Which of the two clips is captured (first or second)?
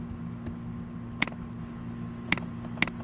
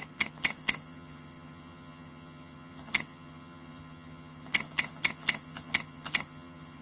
first